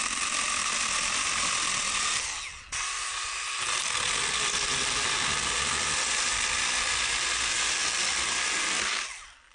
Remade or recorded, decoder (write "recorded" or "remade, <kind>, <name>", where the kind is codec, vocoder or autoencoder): recorded